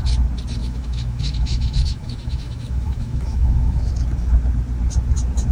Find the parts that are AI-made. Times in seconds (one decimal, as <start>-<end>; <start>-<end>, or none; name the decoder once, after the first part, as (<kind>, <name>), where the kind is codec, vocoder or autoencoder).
0.6-3.9 (autoencoder, DAC-VAE)